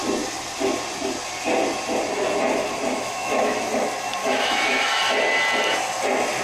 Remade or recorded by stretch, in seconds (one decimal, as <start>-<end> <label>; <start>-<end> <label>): 0.0-2.9 recorded; 2.9-3.7 remade; 3.7-4.2 recorded; 4.2-5.0 remade; 5.0-6.4 recorded